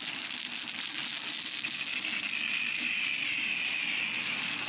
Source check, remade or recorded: recorded